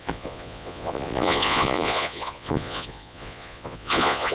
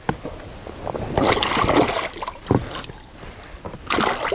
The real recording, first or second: second